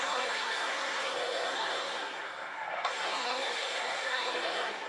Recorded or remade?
remade